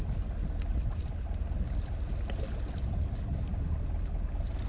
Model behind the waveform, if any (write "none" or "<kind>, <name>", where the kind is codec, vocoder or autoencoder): none